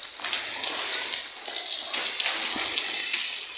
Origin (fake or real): real